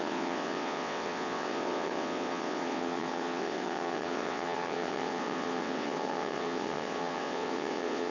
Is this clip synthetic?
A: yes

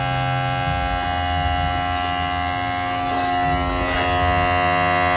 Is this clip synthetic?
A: no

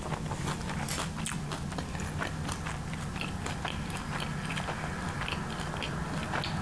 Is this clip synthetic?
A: no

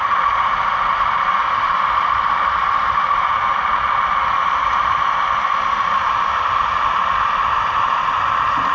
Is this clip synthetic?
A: no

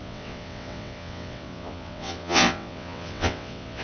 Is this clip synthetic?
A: yes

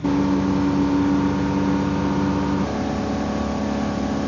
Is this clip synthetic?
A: no